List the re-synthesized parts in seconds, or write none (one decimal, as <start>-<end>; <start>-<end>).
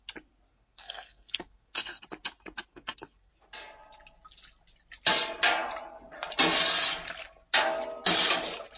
0.5-2.0; 2.7-3.3